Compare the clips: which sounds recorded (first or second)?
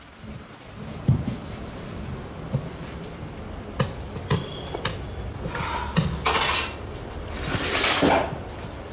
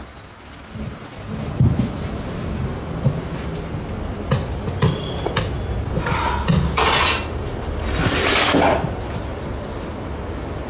second